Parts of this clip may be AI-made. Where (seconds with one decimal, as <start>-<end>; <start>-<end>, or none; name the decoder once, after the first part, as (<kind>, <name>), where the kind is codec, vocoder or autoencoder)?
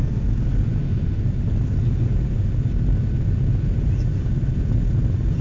none